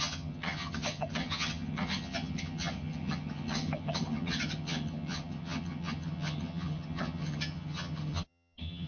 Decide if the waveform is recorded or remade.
remade